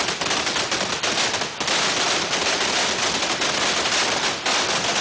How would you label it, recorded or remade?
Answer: recorded